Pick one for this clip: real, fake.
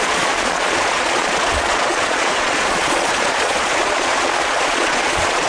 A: fake